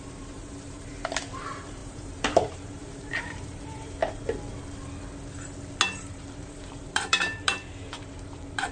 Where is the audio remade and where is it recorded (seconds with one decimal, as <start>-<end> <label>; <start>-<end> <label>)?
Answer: 0.0-4.0 remade; 4.0-6.0 recorded; 6.0-8.7 remade